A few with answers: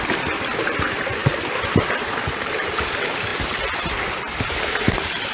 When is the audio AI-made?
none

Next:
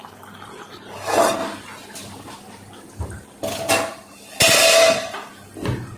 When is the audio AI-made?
1.4-3.7 (vocoder, BigVGAN v2)

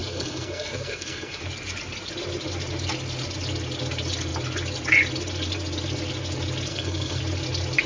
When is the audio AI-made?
0.0-1.4 (codec, SNAC); 6.7-7.2

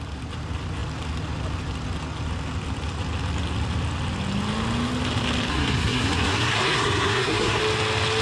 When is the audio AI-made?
5.5-7.6 (codec, SNAC)

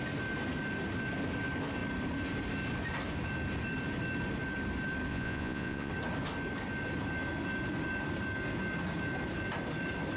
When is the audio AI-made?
5.1-5.9 (vocoder, Vocos)